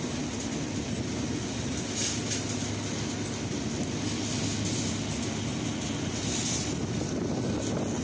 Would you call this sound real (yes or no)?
yes